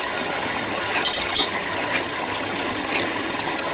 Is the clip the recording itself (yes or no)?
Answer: no